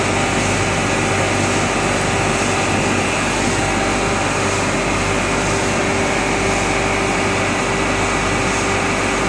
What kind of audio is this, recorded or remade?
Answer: recorded